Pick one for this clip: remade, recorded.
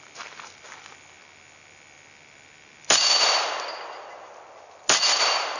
recorded